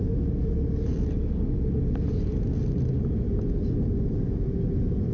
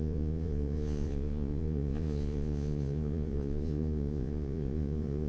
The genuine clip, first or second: first